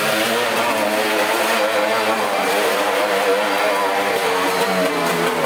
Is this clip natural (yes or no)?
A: yes